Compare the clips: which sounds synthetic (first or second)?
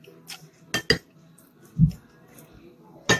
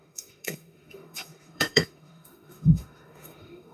second